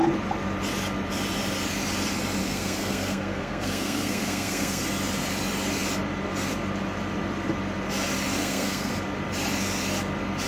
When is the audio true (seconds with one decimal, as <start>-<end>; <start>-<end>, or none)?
0.0-2.4; 4.8-8.4; 8.9-10.5